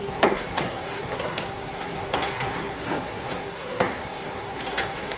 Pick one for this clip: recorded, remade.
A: remade